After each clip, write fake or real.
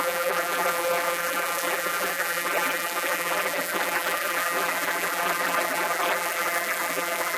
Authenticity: fake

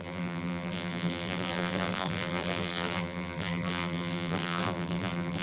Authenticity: fake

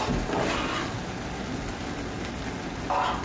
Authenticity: real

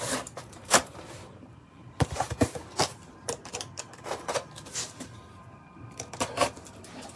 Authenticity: fake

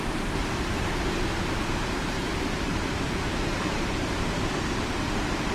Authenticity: fake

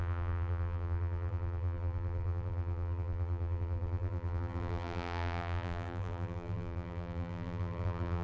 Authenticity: fake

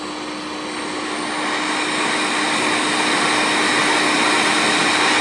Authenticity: real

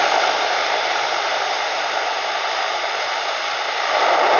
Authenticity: fake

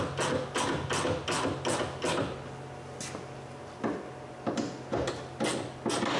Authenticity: real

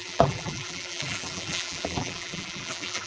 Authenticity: fake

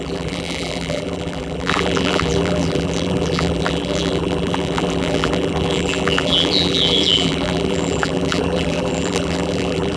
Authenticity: fake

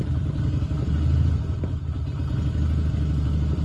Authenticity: real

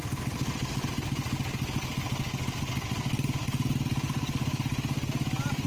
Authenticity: real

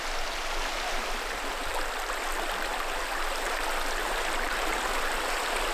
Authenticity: real